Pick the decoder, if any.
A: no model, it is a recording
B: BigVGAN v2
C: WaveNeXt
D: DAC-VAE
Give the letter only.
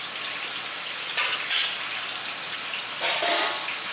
A